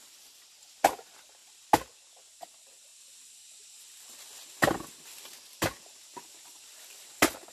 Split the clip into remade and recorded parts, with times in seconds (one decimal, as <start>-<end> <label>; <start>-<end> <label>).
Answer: 0.0-7.5 recorded